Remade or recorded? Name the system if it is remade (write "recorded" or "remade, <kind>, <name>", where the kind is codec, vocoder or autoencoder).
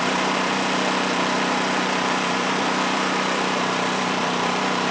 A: remade, vocoder, BigVGAN v2